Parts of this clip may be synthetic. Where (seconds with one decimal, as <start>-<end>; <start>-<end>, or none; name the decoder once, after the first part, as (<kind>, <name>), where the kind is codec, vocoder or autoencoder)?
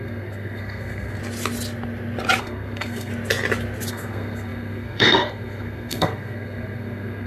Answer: 0.0-1.2 (codec, SNAC); 2.4-3.1; 3.9-7.3